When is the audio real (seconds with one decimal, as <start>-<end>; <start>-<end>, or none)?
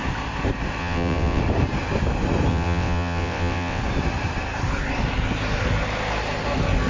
0.0-0.8; 1.4-2.5; 3.8-6.9